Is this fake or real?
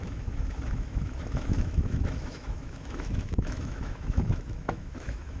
fake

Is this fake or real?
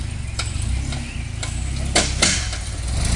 real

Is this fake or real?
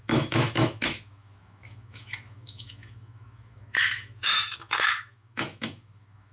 fake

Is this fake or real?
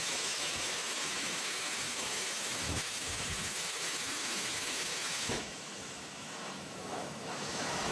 fake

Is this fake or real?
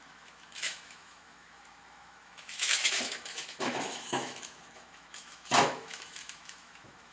fake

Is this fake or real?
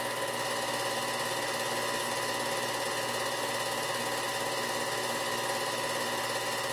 real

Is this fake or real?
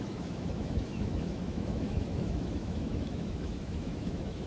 fake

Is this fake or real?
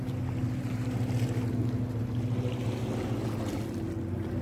real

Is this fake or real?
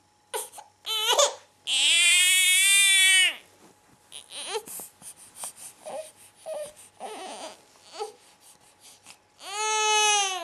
real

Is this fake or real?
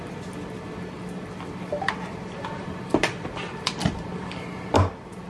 real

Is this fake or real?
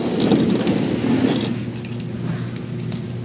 real